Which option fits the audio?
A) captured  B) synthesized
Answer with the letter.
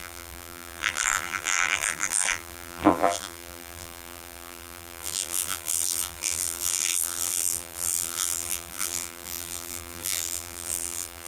B